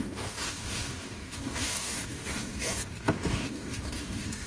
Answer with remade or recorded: remade